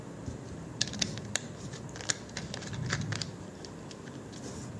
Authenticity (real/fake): real